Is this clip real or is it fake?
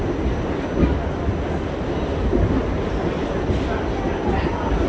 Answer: real